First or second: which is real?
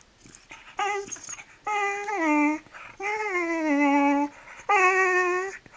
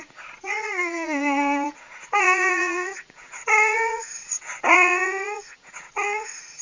first